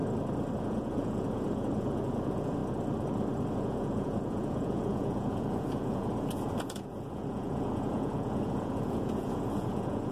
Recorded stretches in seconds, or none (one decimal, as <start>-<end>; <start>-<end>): 0.0-0.6; 2.6-3.5